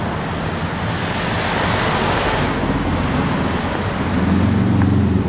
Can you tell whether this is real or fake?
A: real